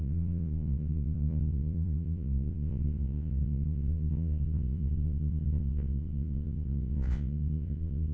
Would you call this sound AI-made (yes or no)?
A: yes